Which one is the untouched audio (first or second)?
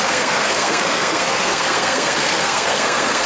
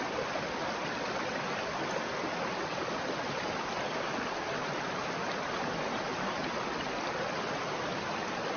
second